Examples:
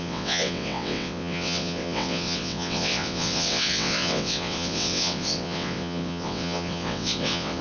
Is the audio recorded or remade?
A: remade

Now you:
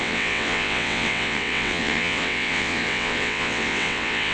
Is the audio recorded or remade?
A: remade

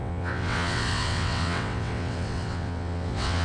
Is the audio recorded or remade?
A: remade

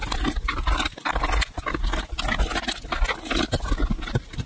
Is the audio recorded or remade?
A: recorded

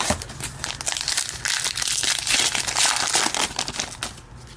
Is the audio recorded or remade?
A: recorded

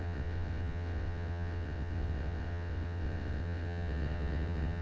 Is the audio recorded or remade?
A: remade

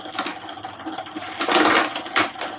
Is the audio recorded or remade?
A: recorded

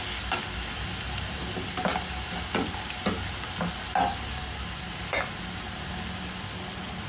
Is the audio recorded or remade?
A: recorded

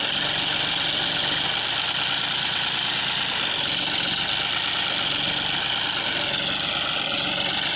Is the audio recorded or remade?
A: recorded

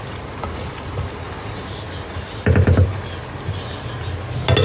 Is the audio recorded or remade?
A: recorded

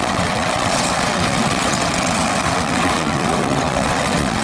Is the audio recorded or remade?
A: remade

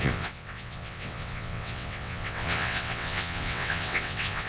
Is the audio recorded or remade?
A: remade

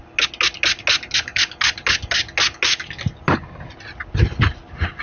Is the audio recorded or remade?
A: recorded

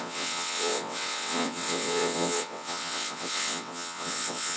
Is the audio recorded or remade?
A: remade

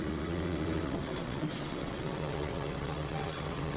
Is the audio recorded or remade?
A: remade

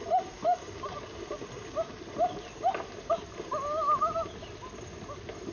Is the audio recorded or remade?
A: recorded